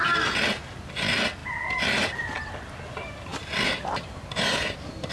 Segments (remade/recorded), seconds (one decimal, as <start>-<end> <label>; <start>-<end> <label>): 0.0-5.1 recorded